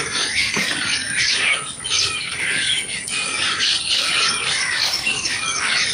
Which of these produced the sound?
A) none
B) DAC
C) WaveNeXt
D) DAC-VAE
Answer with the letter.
B